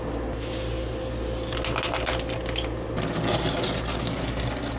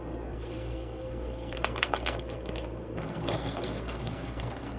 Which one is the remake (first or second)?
second